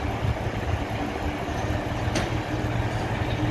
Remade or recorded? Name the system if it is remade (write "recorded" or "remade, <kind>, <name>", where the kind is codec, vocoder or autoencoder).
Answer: recorded